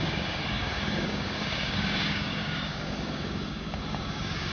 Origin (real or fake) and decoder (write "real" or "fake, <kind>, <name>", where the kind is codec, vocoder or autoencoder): fake, codec, DAC